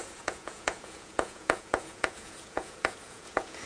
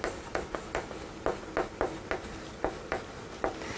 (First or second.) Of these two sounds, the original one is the second